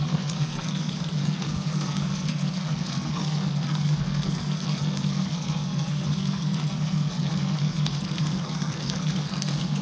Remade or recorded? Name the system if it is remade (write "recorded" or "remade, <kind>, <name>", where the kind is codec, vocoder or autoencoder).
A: remade, codec, SNAC